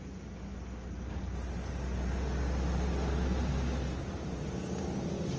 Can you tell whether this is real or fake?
real